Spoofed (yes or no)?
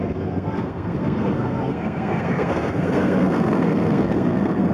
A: yes